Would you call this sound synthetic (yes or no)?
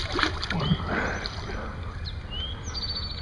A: no